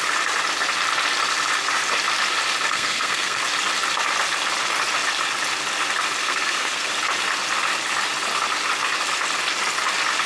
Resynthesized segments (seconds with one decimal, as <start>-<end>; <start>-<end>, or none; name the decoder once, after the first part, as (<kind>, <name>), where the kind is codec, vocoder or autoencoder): 2.7-3.4 (codec, SNAC); 6.2-6.9